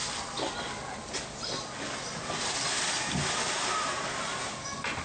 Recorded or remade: recorded